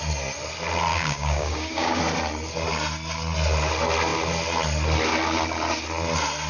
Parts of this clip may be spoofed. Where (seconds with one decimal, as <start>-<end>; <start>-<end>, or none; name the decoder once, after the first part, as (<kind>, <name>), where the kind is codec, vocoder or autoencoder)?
0.9-2.0 (codec, DAC)